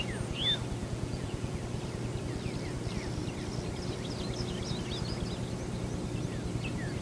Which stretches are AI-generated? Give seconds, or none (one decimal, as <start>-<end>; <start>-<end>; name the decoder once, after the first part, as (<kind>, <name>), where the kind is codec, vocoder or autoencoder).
0.8-1.6 (vocoder, Vocos)